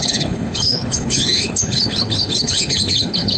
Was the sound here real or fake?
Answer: fake